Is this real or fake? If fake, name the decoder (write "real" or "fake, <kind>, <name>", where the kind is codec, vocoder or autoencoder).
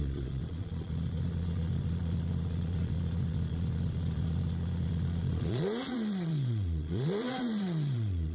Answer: fake, vocoder, Vocos